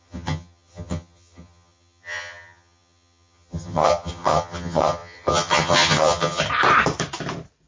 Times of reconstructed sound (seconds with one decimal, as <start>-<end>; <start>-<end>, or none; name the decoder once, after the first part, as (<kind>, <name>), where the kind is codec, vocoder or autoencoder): 0.0-6.4 (vocoder, HiFi-GAN)